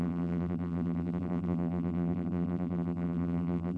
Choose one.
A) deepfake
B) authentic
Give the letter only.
A